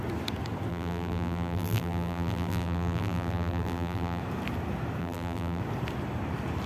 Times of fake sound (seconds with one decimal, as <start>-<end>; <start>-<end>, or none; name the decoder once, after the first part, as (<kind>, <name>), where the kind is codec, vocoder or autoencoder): 0.7-4.2 (vocoder, BigVGAN v2); 5.0-5.6

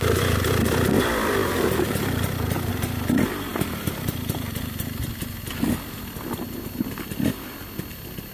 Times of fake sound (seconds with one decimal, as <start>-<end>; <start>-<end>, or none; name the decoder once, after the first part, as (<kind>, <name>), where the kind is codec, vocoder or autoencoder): 1.4-2.7 (vocoder, BigVGAN v2)

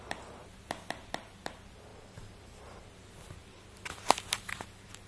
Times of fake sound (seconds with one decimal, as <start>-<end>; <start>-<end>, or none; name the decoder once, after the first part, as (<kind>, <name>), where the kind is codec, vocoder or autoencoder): 1.9-2.8 (vocoder, BigVGAN v2)

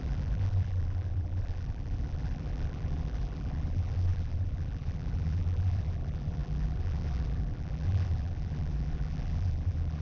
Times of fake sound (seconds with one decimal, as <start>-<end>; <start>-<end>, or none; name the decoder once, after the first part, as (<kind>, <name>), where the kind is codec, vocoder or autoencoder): 0.0-10.0 (vocoder, BigVGAN v2)

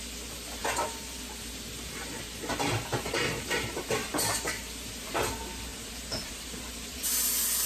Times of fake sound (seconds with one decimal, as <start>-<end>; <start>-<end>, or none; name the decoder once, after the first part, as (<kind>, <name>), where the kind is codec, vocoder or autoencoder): 0.6-5.2 (vocoder, BigVGAN v2); 5.7-6.6

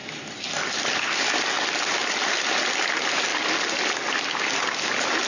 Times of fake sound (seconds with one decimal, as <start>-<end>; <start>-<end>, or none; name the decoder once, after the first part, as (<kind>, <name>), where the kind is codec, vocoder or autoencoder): none